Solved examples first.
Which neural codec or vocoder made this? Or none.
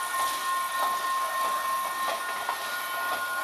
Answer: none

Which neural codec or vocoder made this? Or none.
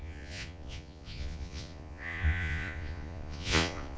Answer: vocoder, Vocos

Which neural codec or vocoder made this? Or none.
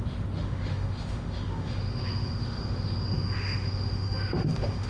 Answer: autoencoder, DAC-VAE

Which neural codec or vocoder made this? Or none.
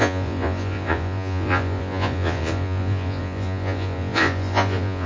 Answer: vocoder, Vocos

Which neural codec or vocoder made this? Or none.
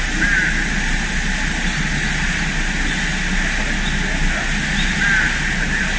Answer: none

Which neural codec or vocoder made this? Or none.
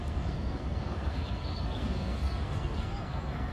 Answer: codec, SNAC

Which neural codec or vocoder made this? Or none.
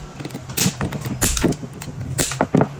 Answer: none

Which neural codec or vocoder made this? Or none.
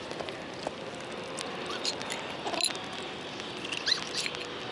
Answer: none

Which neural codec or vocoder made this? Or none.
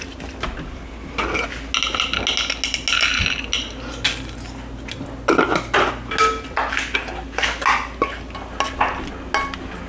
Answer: none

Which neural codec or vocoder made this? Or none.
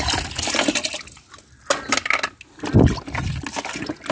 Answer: none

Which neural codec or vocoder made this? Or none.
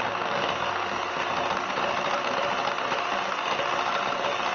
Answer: none